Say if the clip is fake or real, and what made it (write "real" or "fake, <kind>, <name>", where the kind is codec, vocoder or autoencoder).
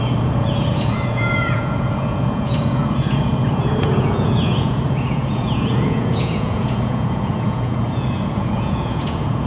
fake, vocoder, Vocos